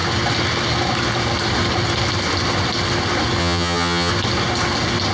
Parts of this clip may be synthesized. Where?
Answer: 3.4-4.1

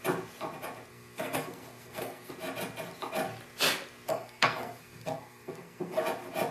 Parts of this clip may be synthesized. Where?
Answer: 0.9-2.3; 4.1-6.0

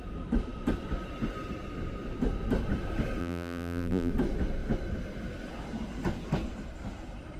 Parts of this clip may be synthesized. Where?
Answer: 3.2-4.1

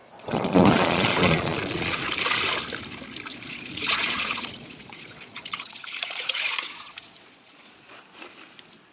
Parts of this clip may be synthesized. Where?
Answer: 0.0-2.1; 3.3-8.0

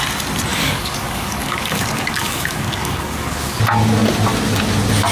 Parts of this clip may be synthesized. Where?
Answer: 0.5-3.6

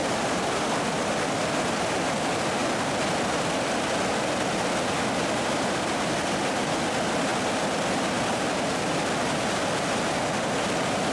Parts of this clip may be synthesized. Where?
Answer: 0.0-2.6; 4.9-7.3; 10.2-11.1

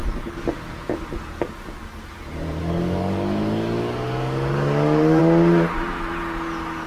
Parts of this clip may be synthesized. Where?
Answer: 2.6-5.2

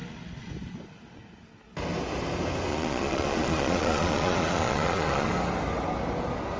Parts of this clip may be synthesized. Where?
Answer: 2.7-5.3